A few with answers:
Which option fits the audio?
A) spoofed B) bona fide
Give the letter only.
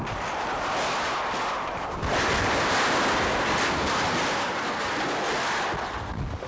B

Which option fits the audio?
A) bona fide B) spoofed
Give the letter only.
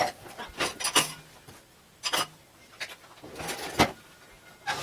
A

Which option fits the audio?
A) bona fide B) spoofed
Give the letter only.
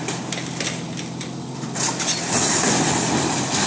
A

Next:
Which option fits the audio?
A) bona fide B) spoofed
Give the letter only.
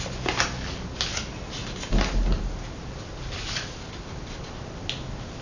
A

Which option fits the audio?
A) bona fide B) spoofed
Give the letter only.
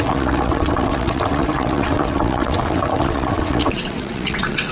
B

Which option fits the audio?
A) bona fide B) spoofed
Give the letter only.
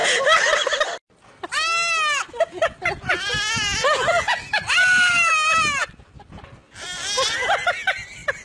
A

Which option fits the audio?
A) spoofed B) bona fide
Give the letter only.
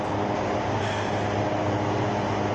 B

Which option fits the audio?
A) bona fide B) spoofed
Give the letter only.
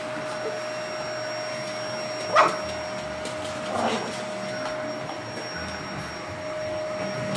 A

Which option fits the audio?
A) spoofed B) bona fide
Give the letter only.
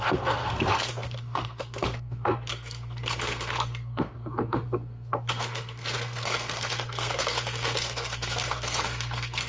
A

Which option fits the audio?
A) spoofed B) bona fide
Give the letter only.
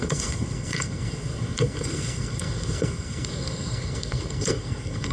A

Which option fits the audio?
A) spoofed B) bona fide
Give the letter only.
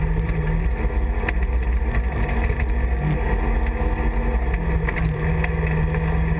B